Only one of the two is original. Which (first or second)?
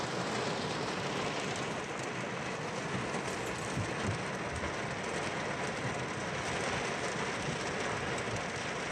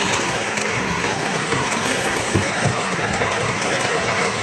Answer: first